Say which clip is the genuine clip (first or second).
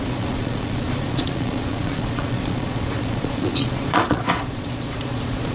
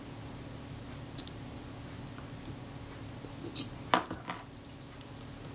second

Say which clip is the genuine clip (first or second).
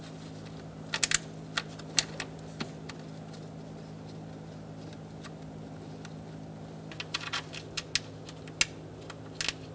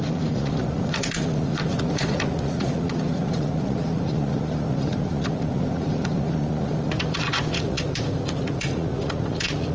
first